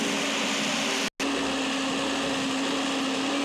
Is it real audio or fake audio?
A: real